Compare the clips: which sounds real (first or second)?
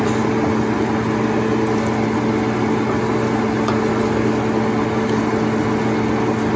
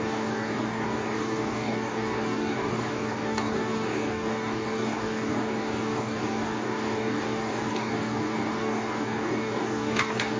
first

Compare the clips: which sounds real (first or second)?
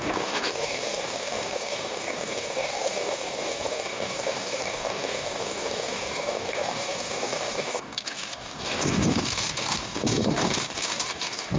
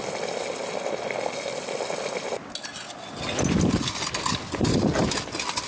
second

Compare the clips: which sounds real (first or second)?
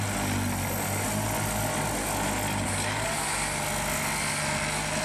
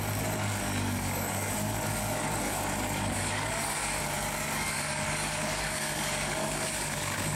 first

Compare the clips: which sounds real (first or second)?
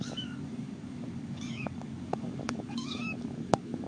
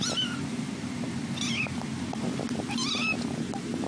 second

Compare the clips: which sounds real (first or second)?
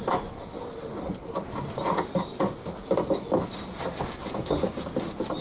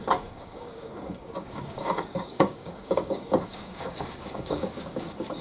first